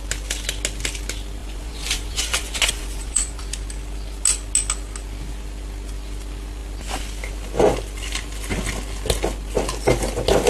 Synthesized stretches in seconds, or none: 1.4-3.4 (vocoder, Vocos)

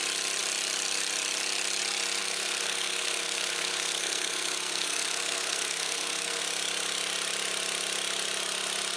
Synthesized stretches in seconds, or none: 2.2-6.4 (codec, SNAC)

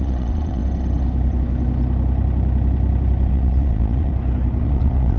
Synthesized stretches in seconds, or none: 0.0-0.6 (vocoder, Vocos); 3.3-4.1; 4.6-5.2

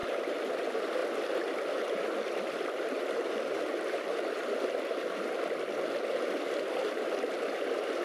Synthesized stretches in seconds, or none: none